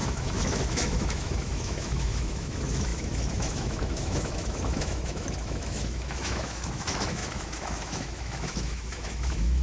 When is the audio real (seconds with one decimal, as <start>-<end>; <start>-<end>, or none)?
none